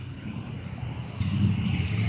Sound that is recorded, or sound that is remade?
recorded